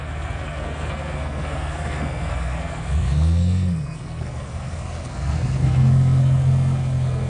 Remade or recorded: remade